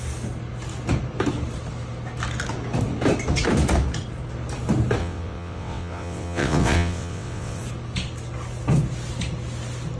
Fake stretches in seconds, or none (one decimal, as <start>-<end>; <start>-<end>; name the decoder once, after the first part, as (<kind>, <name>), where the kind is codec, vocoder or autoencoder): 5.0-7.6 (vocoder, WaveNeXt)